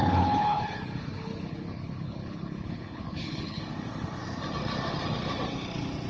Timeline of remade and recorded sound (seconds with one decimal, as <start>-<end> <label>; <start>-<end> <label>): 0.0-3.6 remade; 3.6-6.1 recorded